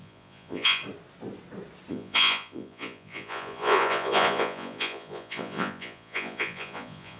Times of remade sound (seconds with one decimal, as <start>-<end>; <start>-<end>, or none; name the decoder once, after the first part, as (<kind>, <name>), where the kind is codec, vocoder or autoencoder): 0.0-0.8 (vocoder, Vocos); 1.9-7.2